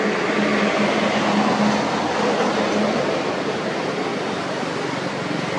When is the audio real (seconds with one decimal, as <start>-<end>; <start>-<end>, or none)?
0.0-5.6